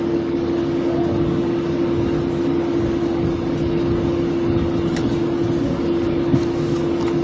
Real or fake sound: fake